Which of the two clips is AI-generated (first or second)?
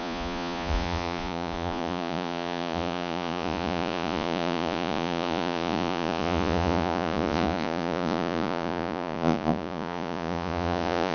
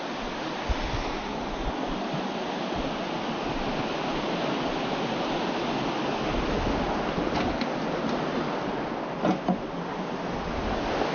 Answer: first